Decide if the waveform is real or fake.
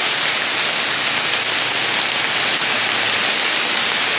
real